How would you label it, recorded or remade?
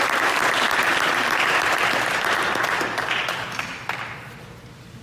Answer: recorded